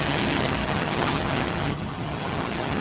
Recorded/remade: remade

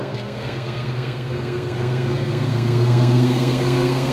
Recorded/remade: remade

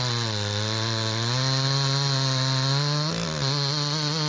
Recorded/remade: recorded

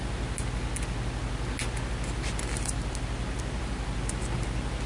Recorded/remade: recorded